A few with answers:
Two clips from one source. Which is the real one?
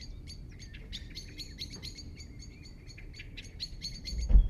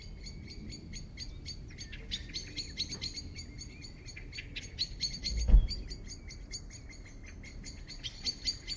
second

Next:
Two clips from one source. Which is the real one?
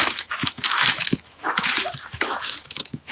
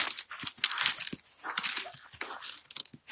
second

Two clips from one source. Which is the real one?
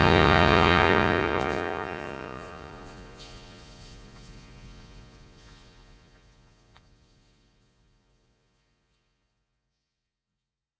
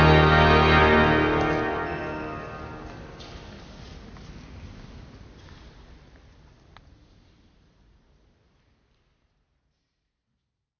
second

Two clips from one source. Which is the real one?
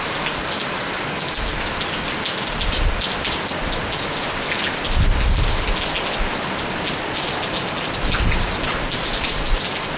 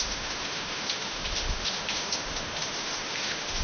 first